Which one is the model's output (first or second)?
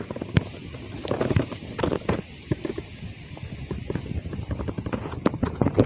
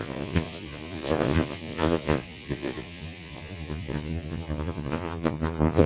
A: second